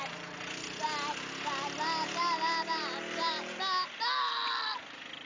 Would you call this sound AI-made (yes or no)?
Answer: no